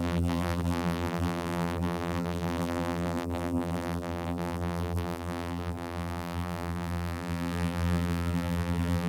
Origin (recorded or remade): remade